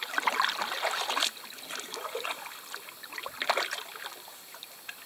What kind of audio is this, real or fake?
real